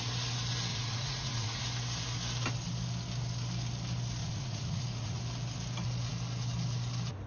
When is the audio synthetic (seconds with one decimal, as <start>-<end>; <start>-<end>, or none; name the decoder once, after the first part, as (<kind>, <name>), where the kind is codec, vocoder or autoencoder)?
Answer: 0.7-1.6 (vocoder, Vocos); 4.2-5.2